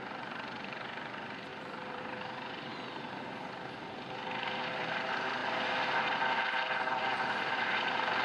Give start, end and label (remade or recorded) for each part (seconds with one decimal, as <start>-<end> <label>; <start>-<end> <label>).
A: 0.0-1.5 recorded; 1.5-2.0 remade; 2.0-8.2 recorded